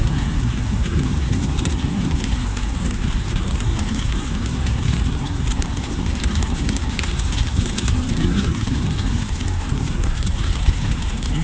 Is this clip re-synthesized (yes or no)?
yes